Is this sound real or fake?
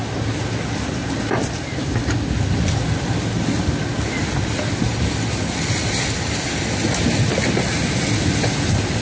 real